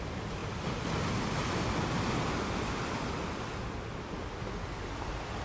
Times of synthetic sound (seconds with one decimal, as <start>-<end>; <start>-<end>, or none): none